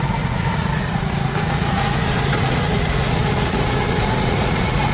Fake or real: fake